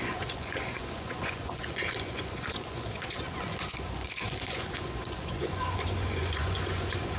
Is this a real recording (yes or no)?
no